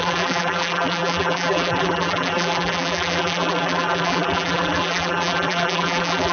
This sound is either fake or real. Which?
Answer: fake